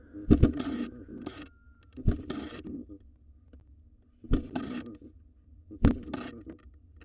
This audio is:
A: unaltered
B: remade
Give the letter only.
A